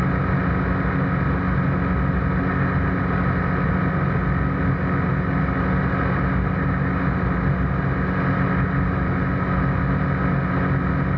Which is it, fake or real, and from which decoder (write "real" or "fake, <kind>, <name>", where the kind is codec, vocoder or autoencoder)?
real